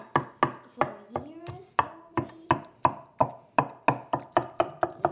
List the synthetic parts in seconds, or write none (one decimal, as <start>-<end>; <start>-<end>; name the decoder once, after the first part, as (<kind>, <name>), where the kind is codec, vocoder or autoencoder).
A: none